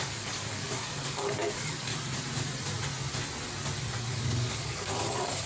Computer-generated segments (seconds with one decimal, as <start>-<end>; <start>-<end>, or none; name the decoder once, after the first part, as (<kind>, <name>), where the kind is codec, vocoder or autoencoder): 0.0-1.9 (codec, DAC); 4.0-5.5